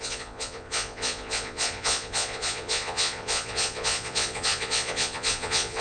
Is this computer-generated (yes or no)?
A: yes